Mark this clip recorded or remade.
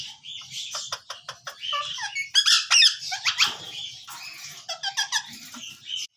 recorded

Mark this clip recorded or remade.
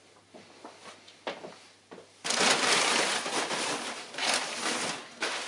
recorded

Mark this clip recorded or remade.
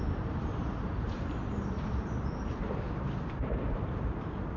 remade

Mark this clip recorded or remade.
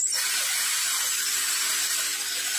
recorded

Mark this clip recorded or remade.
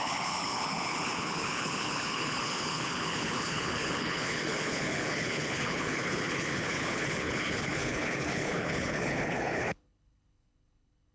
remade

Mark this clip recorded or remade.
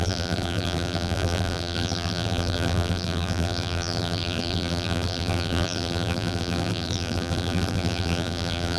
remade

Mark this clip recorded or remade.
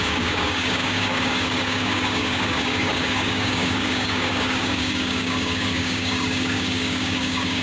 remade